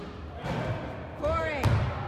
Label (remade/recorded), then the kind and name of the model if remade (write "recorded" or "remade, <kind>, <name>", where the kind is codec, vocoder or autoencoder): remade, vocoder, BigVGAN v2